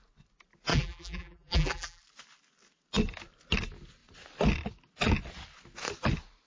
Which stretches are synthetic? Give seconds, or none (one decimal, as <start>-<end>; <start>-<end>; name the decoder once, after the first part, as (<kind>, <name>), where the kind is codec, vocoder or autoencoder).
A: 0.7-2.0 (vocoder, BigVGAN v2)